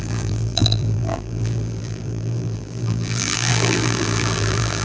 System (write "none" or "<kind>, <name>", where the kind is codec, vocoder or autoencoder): vocoder, BigVGAN v2